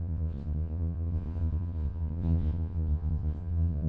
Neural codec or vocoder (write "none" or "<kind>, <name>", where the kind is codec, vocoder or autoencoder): vocoder, Vocos